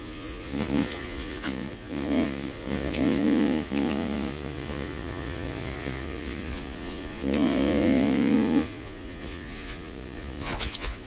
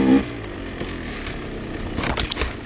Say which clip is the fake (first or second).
first